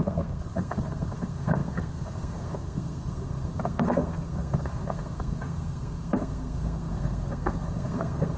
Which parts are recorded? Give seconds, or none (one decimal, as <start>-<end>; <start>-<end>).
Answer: none